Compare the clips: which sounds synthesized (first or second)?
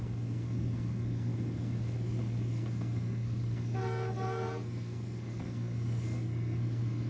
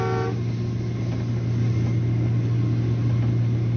first